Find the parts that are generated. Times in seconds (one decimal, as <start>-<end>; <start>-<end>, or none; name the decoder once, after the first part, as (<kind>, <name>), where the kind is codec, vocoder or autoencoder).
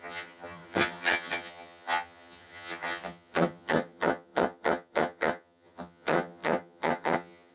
0.0-7.5 (vocoder, HiFi-GAN)